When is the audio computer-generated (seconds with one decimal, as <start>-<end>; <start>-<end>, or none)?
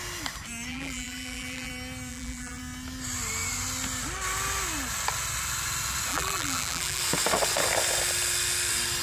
0.7-1.7; 2.1-2.6; 6.1-7.0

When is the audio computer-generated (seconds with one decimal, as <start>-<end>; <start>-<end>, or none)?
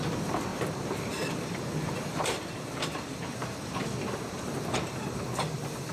0.5-3.8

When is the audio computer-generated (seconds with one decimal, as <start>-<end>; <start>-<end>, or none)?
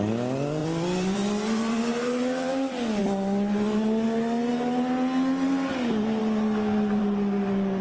0.6-2.5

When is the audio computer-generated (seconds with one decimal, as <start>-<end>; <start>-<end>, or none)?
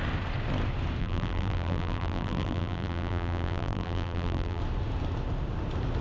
1.0-4.6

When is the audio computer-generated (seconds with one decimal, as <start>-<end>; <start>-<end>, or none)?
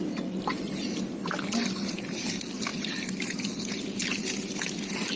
0.0-5.2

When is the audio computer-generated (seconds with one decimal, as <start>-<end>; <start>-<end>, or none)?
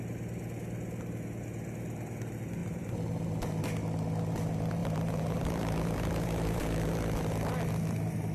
2.6-3.6; 4.8-6.9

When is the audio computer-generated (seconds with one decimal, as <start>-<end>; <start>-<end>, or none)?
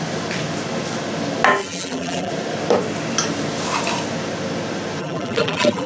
1.6-2.3; 5.0-5.9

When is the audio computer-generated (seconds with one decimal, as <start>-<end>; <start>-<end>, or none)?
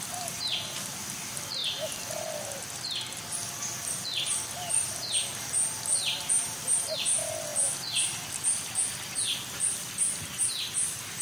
0.0-1.6; 6.3-7.5; 10.7-11.2